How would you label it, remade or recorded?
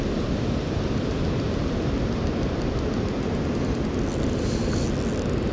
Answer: recorded